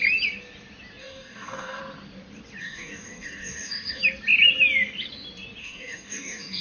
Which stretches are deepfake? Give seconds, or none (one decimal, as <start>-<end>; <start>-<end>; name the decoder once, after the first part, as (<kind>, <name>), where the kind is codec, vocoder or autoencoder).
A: 1.0-1.8 (codec, DAC); 2.6-4.0; 5.6-6.6